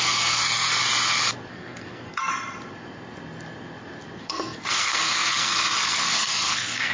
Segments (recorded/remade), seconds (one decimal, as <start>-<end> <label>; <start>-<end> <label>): 0.0-0.7 remade; 0.7-1.5 recorded; 1.5-2.3 remade; 2.3-4.2 recorded; 4.2-6.9 remade

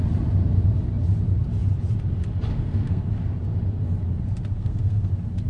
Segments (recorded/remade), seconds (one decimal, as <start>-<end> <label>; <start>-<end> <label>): 0.0-2.5 recorded; 2.5-3.1 remade; 3.1-4.5 recorded; 4.5-5.1 remade; 5.1-5.5 recorded

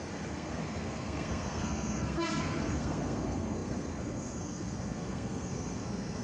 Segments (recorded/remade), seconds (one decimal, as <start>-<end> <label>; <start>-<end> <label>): 0.0-6.2 remade

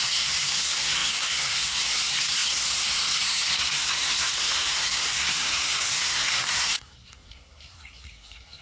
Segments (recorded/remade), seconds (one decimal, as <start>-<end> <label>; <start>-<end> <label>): 0.0-8.6 remade

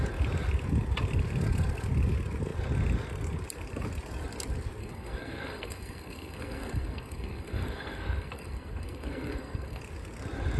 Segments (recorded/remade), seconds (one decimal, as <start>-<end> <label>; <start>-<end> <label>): 0.0-4.8 recorded; 4.8-9.8 remade; 9.8-10.6 recorded

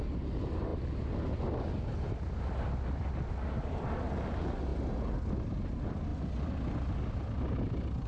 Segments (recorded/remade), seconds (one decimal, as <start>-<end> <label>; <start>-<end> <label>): 0.0-8.1 recorded

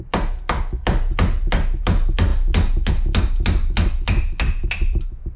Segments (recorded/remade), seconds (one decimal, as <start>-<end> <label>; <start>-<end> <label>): 0.0-5.4 recorded

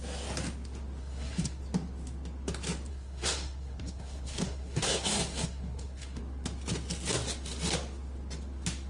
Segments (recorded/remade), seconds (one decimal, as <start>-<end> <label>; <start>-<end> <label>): 0.0-1.0 recorded; 1.0-1.6 remade; 1.6-2.9 recorded; 2.9-6.2 remade; 6.2-8.9 recorded